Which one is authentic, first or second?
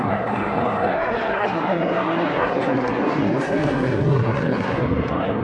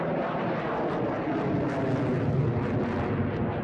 second